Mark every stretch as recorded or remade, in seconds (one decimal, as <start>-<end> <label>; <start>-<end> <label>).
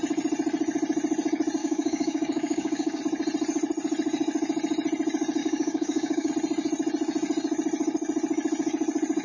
0.0-1.6 recorded; 1.6-3.0 remade; 3.0-5.4 recorded; 5.4-6.3 remade; 6.3-9.2 recorded